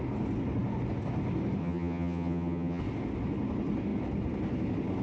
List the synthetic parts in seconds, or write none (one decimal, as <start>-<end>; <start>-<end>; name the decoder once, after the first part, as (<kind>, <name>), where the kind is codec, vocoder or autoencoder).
1.6-2.8 (vocoder, HiFi-GAN)